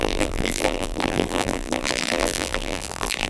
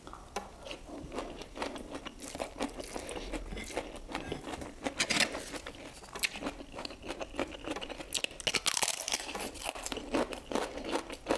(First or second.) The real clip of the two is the second